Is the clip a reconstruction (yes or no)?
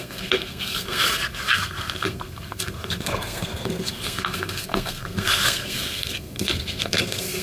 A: yes